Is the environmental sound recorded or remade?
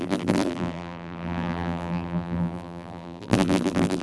remade